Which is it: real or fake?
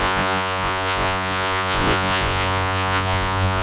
fake